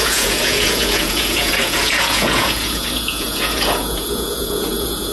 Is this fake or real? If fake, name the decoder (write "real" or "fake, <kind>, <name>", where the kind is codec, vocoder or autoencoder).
fake, vocoder, Vocos